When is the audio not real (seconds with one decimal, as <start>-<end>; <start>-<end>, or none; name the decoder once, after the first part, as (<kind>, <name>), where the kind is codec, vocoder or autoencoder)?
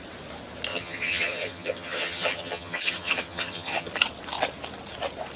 0.7-3.9 (vocoder, HiFi-GAN)